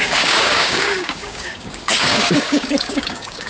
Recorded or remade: remade